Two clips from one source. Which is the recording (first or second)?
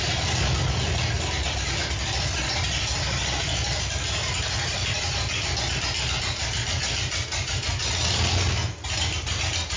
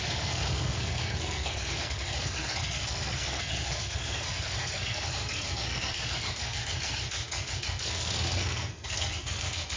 first